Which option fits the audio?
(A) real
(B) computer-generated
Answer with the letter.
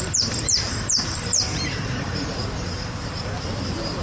B